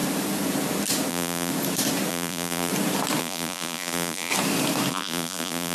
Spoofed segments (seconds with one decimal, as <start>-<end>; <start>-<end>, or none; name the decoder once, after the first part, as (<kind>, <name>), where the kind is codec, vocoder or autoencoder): 1.1-1.5 (vocoder, BigVGAN v2); 2.1-2.7; 3.2-4.3; 4.9-5.7